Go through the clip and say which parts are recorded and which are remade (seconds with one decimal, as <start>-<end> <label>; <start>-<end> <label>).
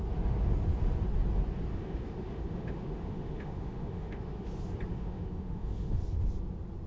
0.0-1.7 recorded; 1.7-4.5 remade; 4.5-4.9 recorded; 4.9-6.0 remade; 6.0-6.9 recorded